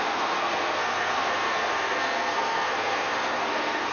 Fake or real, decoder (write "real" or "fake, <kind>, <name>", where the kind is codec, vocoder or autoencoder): fake, codec, SNAC